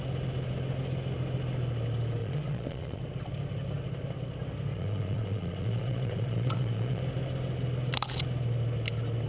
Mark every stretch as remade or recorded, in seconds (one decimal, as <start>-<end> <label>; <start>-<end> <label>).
0.0-2.2 recorded; 2.2-3.0 remade; 3.0-4.7 recorded; 4.7-7.0 remade; 7.0-9.3 recorded